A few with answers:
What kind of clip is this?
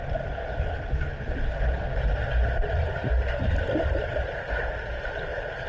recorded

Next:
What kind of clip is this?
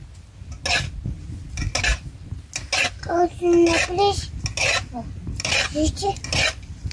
recorded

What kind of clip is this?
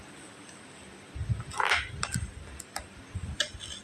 recorded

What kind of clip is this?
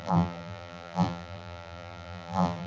remade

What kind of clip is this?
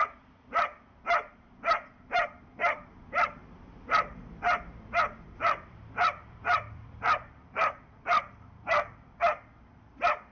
remade